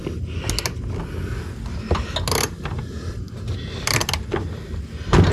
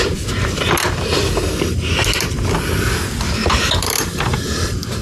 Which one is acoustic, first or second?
first